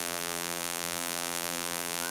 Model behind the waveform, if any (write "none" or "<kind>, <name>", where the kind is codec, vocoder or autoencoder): vocoder, BigVGAN v2